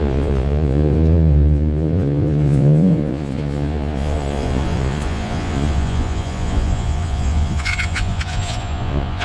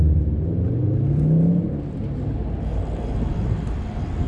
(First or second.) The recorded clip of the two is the second